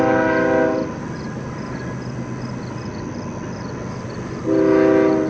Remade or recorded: recorded